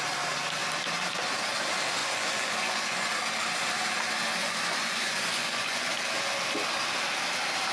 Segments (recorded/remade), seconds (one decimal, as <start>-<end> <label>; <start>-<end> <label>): 0.0-2.0 recorded; 2.0-3.1 remade; 3.1-4.4 recorded; 4.4-5.9 remade; 5.9-7.7 recorded